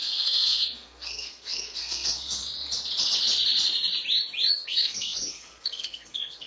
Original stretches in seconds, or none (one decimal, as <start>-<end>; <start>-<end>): 2.4-4.5